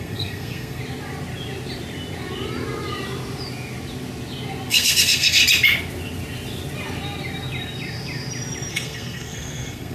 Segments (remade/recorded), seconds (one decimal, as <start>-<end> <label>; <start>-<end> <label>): 0.0-0.8 remade; 0.8-4.7 recorded; 4.7-5.4 remade; 5.4-8.7 recorded; 8.7-9.9 remade